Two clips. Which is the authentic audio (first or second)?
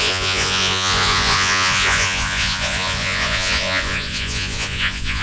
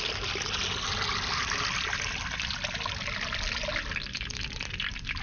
second